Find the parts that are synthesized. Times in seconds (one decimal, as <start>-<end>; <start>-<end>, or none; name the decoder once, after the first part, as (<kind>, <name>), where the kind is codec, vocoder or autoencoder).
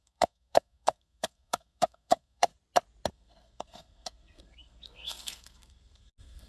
0.0-2.5 (codec, SNAC); 3.1-6.5